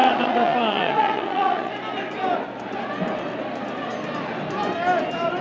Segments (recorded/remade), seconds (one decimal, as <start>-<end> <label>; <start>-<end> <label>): 0.0-1.7 remade; 1.7-5.4 recorded